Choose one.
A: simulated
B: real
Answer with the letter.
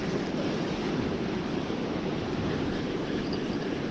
B